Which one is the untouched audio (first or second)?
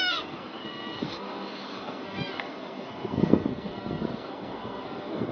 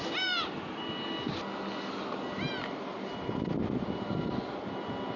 second